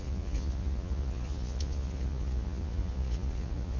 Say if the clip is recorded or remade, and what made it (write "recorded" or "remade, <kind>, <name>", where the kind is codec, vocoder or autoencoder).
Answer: remade, vocoder, Vocos